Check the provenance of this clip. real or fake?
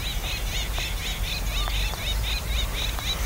real